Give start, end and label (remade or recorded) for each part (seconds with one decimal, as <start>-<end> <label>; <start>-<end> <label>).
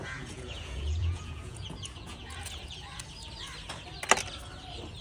0.0-3.0 remade; 3.0-5.0 recorded